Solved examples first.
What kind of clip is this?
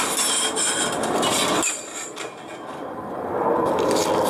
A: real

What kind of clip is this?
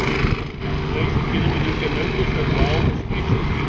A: real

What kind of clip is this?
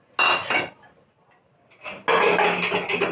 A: real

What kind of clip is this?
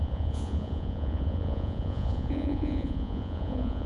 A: fake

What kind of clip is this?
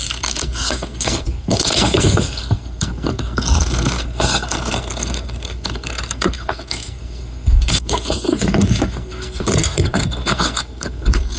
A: fake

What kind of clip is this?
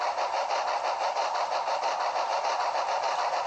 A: real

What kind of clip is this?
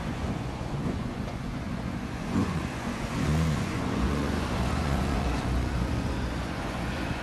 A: fake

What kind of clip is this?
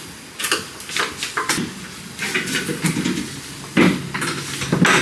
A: real